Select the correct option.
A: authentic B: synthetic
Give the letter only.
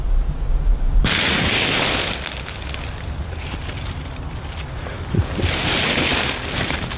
A